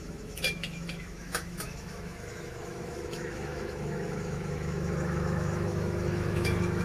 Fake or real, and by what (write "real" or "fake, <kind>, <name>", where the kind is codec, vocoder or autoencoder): fake, autoencoder, DAC-VAE